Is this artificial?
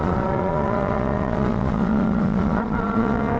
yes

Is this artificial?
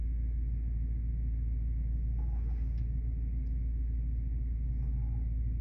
no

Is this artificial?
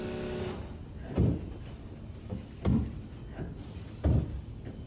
no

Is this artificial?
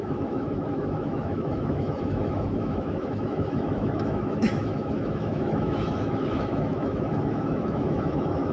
yes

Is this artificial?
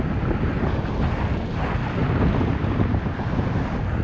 no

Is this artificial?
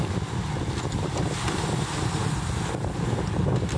no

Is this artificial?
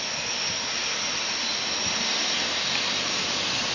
no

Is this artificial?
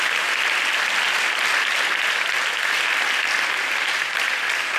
no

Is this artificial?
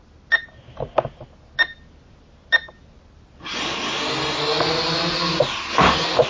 no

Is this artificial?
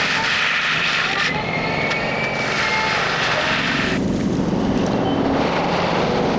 no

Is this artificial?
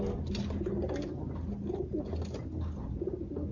no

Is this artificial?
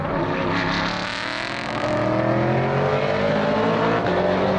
no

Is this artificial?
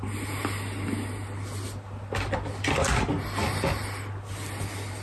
no